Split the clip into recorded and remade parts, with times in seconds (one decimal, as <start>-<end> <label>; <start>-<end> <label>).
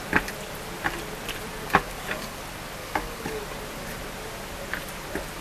0.0-1.6 recorded; 1.6-2.4 remade; 2.4-2.8 recorded; 2.8-3.4 remade; 3.4-5.4 recorded